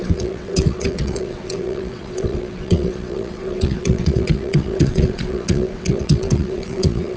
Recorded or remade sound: remade